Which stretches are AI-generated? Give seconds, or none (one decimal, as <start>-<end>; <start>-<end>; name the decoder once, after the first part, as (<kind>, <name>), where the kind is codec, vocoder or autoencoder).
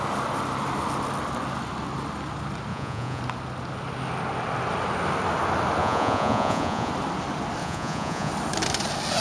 2.7-3.2 (vocoder, Vocos); 5.8-6.9; 7.6-8.3